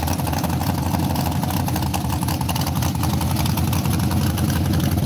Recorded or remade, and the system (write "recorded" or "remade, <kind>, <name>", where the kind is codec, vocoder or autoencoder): recorded